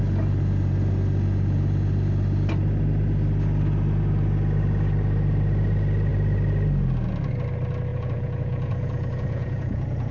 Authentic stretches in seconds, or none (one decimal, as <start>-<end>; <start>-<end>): 0.0-7.9